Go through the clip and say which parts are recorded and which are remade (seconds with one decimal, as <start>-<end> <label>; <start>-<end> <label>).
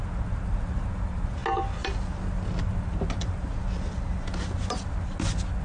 0.0-5.6 recorded